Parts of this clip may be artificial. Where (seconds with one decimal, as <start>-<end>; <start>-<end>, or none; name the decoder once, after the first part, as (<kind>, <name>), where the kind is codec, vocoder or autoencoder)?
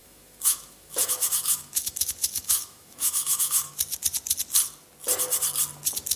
0.0-3.7 (autoencoder, DAC-VAE)